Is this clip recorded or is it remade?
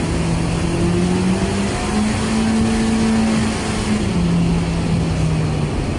recorded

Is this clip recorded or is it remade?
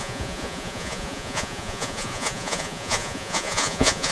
remade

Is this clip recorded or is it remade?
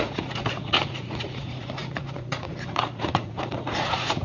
remade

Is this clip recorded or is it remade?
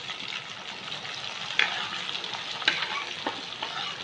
recorded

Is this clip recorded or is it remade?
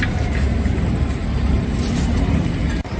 recorded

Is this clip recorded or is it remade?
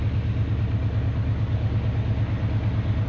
recorded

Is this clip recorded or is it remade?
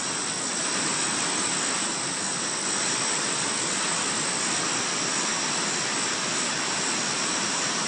recorded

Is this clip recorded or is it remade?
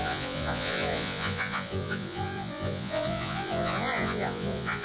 remade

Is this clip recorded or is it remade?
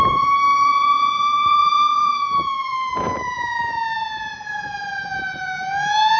remade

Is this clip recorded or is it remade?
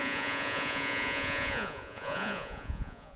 remade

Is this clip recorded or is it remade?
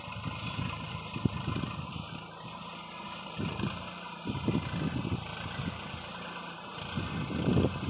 recorded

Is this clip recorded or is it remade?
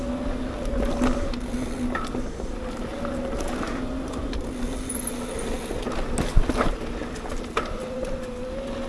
recorded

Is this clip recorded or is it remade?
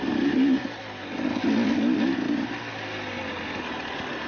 recorded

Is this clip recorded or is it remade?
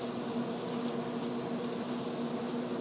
recorded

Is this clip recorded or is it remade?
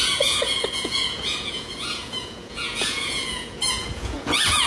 remade